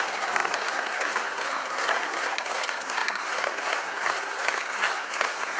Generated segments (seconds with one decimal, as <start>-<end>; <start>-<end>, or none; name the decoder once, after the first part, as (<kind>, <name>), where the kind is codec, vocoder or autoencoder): 0.0-5.6 (codec, SNAC)